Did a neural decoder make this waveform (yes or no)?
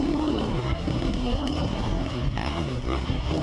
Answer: yes